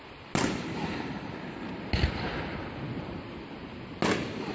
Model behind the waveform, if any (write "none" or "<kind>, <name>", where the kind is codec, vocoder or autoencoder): none